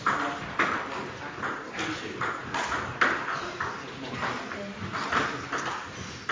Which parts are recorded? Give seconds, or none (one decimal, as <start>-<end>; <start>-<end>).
0.0-6.3